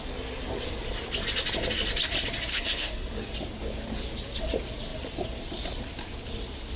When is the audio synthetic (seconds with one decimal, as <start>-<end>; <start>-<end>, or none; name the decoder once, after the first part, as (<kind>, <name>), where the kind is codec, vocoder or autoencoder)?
2.5-3.3 (codec, SNAC)